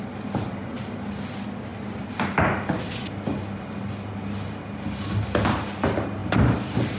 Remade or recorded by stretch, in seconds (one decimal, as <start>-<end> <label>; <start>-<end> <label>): 0.0-7.0 recorded